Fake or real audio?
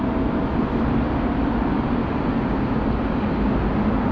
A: real